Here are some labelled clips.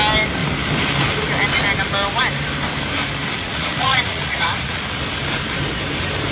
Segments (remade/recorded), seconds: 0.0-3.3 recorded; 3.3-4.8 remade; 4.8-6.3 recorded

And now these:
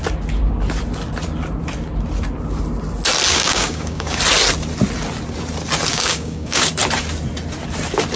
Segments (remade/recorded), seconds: 0.0-3.3 recorded; 3.3-4.2 remade; 4.2-5.9 recorded; 5.9-6.7 remade; 6.7-8.2 recorded

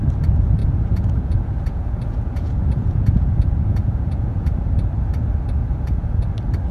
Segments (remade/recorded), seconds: 0.0-0.6 recorded; 0.6-4.6 remade; 4.6-5.6 recorded; 5.6-6.3 remade; 6.3-6.7 recorded